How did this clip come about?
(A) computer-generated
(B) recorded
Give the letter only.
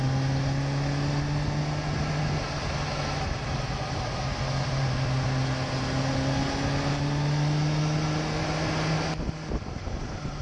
B